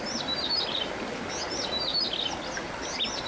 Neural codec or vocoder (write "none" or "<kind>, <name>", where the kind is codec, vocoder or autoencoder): none